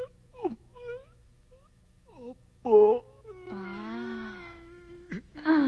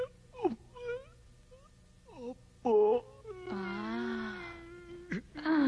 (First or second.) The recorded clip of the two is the second